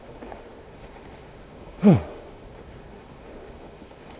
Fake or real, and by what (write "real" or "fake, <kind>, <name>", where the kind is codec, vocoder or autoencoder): fake, autoencoder, DAC-VAE